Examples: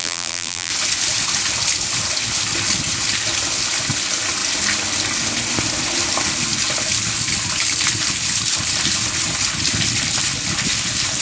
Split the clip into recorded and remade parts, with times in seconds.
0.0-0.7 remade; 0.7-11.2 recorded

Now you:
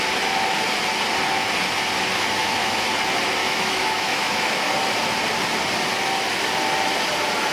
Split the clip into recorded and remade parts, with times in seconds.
0.0-2.4 recorded; 2.4-2.9 remade; 2.9-3.4 recorded; 3.4-4.7 remade; 4.7-7.5 recorded

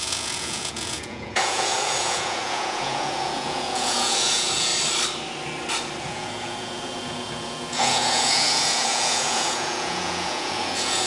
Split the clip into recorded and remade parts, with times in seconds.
0.0-4.7 remade; 4.7-6.0 recorded; 6.0-11.1 remade

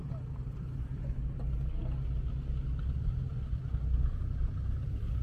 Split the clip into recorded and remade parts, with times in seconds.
0.0-1.0 remade; 1.0-5.2 recorded

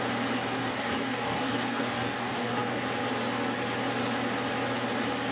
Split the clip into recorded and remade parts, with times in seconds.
0.0-0.5 recorded; 0.5-2.8 remade; 2.8-5.3 recorded

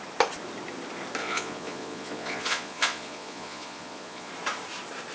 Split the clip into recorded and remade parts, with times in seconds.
0.0-1.2 recorded; 1.2-4.3 remade; 4.3-5.1 recorded

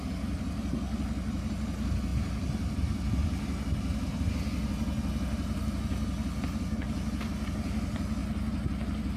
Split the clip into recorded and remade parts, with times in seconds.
0.0-2.1 recorded; 2.1-4.3 remade; 4.3-9.2 recorded

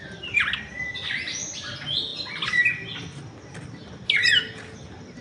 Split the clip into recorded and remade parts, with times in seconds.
0.0-5.2 recorded